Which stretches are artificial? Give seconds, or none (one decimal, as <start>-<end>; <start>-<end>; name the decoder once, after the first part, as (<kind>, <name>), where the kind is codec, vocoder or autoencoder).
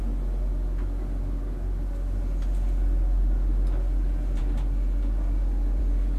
none